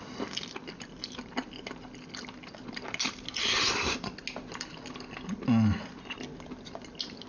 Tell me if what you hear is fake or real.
real